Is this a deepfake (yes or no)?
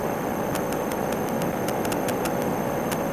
no